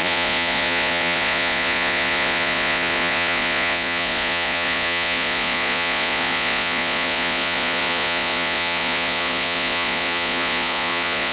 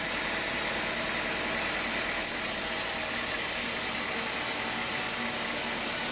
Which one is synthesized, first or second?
first